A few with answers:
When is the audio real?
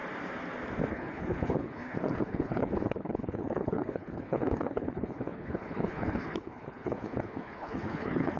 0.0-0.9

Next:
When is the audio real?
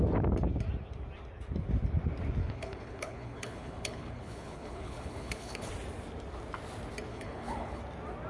0.0-2.4; 5.7-7.1; 7.8-8.3